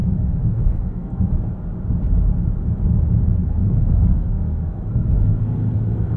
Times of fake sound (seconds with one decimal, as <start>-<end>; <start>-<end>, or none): 0.0-1.3; 3.4-6.2